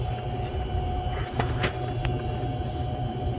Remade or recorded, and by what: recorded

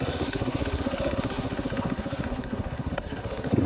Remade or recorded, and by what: remade, codec, SNAC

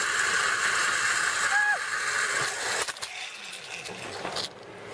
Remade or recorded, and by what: recorded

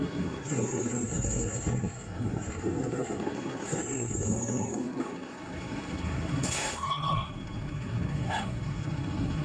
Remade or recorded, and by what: remade, codec, SNAC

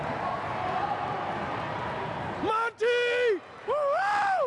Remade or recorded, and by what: recorded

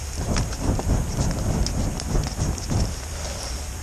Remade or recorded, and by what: remade, vocoder, BigVGAN v2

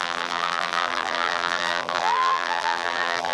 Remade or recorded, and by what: remade, vocoder, BigVGAN v2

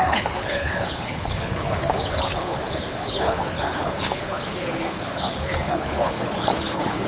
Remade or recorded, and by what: remade, codec, HILCodec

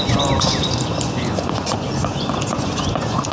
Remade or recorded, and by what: remade, vocoder, Vocos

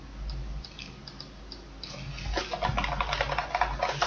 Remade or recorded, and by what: recorded